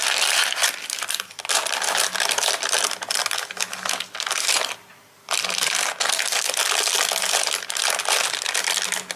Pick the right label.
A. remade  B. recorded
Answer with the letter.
B